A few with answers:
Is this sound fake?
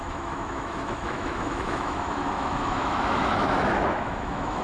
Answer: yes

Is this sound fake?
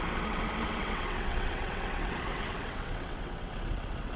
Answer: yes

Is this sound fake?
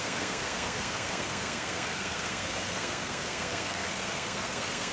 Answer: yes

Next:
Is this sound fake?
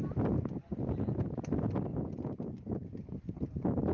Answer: no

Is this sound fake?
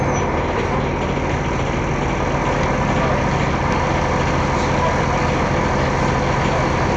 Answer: no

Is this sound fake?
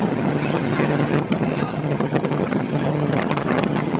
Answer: yes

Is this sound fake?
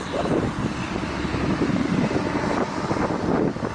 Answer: yes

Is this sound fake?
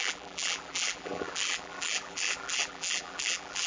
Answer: yes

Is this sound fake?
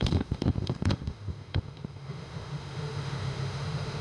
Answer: yes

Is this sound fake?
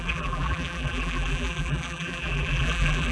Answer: yes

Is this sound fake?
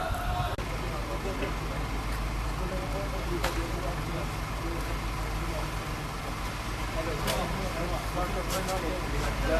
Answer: no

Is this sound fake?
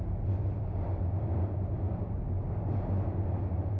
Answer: no